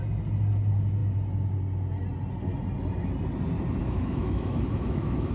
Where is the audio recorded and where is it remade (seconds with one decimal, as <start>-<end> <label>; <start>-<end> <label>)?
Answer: 0.0-3.8 recorded; 3.8-5.3 remade